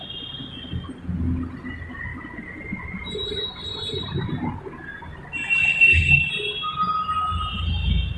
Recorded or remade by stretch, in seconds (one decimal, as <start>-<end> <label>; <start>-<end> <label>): 0.0-5.6 recorded; 5.6-6.3 remade; 6.3-8.2 recorded